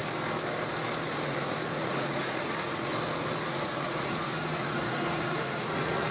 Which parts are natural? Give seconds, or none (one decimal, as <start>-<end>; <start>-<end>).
0.0-1.1; 2.9-3.5